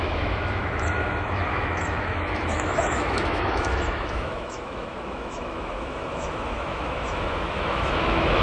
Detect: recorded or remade remade